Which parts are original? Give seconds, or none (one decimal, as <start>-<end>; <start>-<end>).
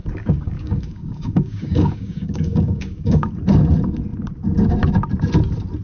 3.3-5.8